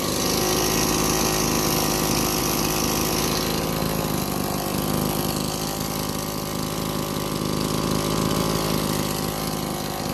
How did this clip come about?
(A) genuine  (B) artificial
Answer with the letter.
A